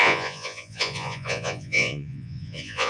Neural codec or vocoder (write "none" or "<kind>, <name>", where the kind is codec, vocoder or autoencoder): vocoder, Vocos